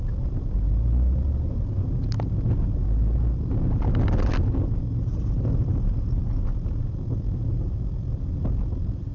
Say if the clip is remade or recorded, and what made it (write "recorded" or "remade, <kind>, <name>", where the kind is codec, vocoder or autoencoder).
recorded